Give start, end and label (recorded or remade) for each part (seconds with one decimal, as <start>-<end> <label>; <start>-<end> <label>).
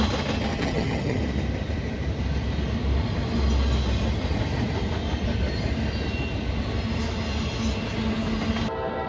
0.0-0.5 recorded; 0.5-1.2 remade; 1.2-9.1 recorded